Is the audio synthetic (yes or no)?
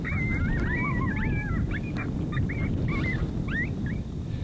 no